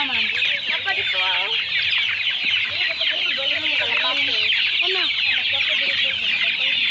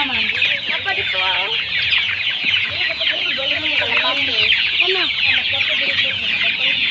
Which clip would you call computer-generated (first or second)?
second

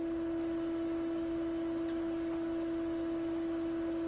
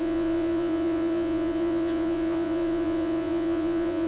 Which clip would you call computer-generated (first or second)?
second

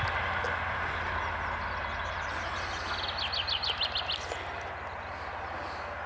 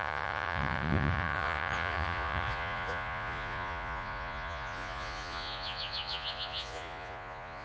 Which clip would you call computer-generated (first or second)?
second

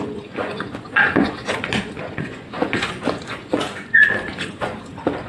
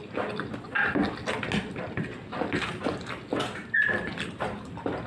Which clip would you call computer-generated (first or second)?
first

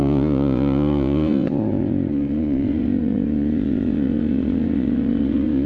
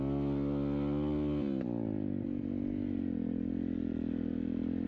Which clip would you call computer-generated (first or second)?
first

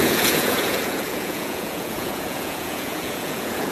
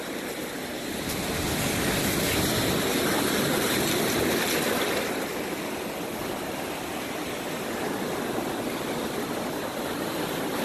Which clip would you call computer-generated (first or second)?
first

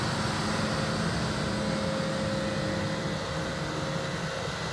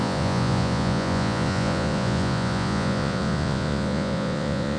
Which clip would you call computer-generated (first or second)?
second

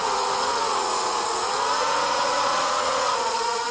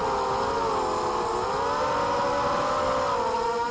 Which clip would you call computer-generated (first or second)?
first